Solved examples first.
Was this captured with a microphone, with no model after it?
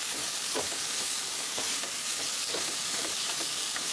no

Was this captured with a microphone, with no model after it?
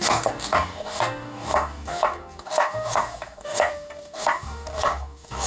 no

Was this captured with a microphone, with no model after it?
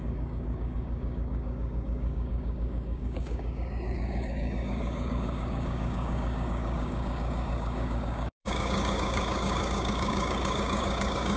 no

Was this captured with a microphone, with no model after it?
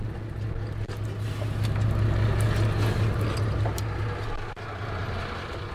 yes